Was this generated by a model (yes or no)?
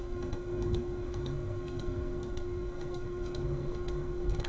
yes